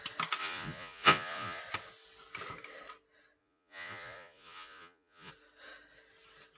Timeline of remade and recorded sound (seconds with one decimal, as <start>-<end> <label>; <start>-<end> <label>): 0.0-0.4 recorded; 0.4-1.6 remade; 1.6-3.4 recorded; 3.4-5.3 remade; 5.3-6.6 recorded